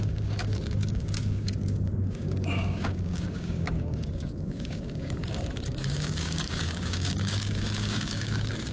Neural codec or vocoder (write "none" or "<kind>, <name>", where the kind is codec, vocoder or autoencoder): codec, DAC